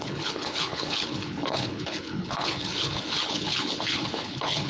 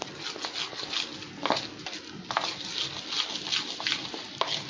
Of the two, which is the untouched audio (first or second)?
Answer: second